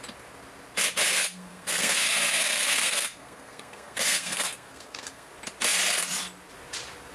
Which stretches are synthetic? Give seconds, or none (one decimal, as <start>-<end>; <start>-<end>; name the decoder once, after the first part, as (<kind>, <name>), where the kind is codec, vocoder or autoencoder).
1.1-5.3 (codec, SNAC)